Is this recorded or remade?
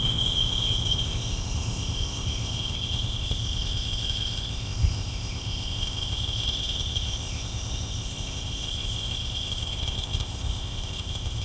remade